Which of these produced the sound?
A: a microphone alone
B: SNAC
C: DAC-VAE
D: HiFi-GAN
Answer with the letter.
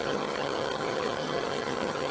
D